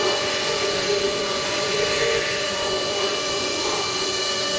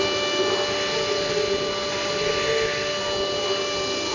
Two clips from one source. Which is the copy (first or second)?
first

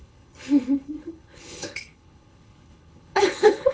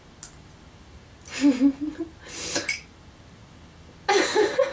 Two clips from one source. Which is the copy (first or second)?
first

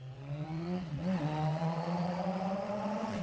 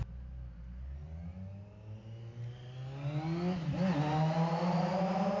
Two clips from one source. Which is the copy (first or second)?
first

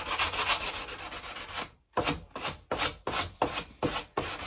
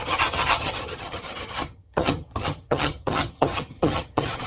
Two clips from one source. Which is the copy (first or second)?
second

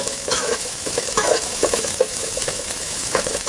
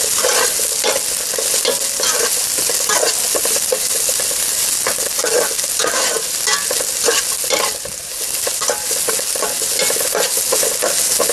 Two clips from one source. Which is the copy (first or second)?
first